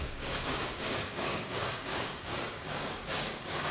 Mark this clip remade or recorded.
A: remade